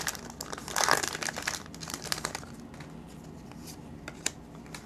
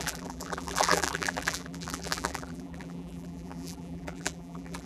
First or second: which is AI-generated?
second